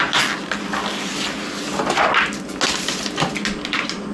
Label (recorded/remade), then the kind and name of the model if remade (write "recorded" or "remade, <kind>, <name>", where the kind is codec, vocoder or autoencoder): recorded